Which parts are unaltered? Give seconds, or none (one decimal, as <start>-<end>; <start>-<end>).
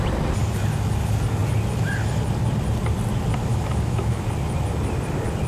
0.0-3.5; 4.2-5.5